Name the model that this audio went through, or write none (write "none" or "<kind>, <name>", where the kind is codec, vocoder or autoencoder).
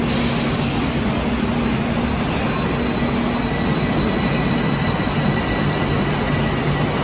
none